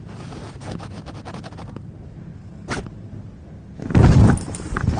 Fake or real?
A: real